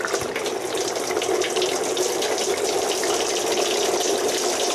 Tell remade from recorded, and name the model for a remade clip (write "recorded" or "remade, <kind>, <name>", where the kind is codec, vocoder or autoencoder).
recorded